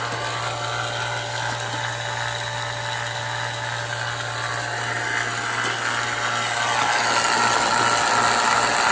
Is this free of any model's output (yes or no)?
yes